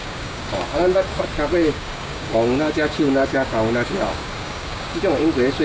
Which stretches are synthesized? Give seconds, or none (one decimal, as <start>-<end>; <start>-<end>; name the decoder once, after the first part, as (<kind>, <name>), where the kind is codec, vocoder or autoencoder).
0.0-1.2 (codec, DAC); 1.6-5.0